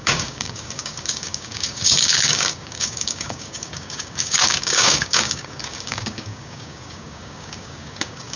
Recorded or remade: remade